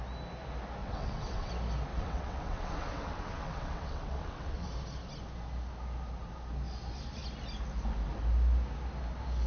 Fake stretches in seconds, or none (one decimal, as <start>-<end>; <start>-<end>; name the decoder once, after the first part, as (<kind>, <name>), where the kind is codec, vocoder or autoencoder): 0.8-1.5 (vocoder, WaveNeXt); 1.9-4.7